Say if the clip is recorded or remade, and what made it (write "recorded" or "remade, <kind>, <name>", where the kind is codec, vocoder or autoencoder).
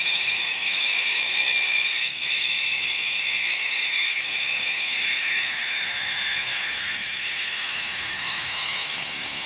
remade, autoencoder, DAC-VAE